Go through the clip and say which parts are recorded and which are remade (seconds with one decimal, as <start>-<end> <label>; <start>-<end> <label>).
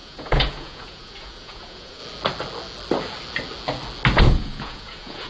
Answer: 0.0-2.0 remade; 2.0-4.2 recorded; 4.2-5.3 remade